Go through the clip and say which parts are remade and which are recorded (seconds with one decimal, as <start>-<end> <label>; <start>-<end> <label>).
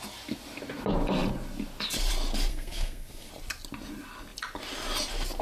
0.0-2.5 recorded; 2.5-3.3 remade; 3.3-5.4 recorded